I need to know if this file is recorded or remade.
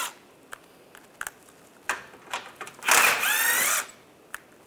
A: recorded